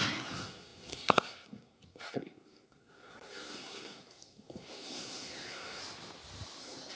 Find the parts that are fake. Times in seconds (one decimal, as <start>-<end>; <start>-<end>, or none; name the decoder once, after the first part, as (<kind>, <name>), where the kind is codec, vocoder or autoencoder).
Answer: 0.0-5.8 (codec, SNAC); 6.6-7.0

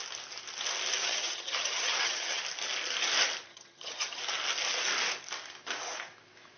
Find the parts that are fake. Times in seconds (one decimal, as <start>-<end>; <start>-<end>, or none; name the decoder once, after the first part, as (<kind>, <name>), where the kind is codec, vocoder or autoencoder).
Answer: 1.0-2.4 (vocoder, HiFi-GAN); 3.5-4.2

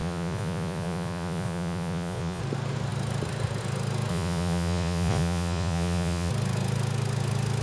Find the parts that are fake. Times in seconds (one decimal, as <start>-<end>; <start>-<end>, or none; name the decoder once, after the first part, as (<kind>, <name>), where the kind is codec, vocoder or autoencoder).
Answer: 0.0-2.4 (vocoder, Vocos); 4.1-6.3

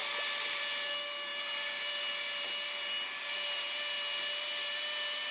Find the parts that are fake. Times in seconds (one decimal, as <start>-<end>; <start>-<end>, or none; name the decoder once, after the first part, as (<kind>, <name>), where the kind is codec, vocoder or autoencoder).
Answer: none

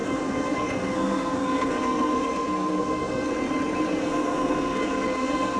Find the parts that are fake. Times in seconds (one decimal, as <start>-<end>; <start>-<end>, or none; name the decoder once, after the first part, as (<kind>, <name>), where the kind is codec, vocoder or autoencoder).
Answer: 0.0-3.3 (codec, SNAC); 4.0-5.6

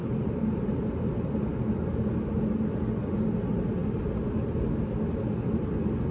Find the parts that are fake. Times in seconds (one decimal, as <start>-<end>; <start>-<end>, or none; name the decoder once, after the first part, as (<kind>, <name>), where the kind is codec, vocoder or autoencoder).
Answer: none

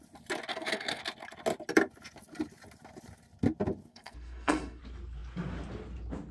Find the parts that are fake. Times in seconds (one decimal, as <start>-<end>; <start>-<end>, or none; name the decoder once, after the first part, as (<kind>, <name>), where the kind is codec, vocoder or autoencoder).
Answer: 0.5-1.0 (codec, SNAC); 3.9-4.8